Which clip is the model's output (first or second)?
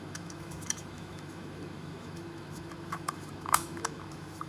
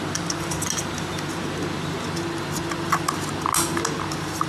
first